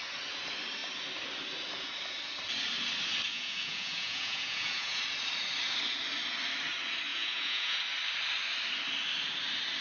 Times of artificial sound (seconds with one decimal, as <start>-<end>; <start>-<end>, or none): 3.3-5.0; 7.1-7.8